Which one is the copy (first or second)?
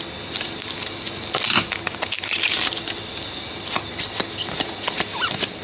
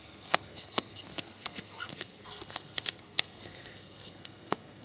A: second